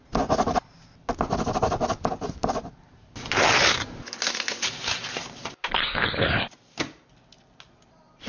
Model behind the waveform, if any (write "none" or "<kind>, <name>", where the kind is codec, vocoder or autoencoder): none